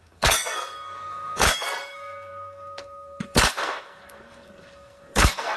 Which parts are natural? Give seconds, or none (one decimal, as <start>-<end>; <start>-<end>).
none